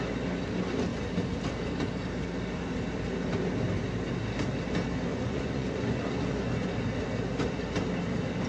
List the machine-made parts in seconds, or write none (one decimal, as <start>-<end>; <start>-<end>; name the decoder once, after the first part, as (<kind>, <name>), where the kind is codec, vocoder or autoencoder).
5.1-6.7 (vocoder, Vocos)